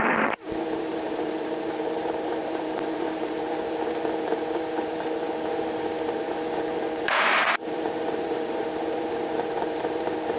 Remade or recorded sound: remade